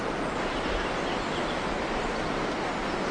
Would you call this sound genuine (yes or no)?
yes